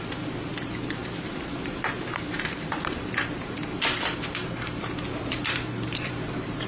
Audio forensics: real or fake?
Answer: fake